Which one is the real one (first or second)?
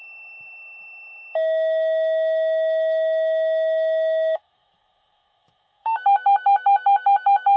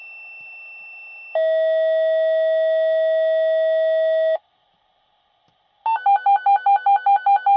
second